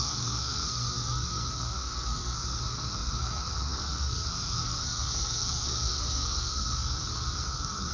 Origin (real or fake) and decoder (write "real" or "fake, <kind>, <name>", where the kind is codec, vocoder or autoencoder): fake, codec, SNAC